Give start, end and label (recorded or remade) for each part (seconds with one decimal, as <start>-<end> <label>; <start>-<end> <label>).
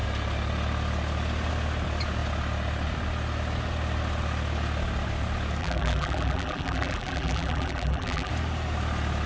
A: 0.0-5.6 recorded; 5.6-8.3 remade; 8.3-9.3 recorded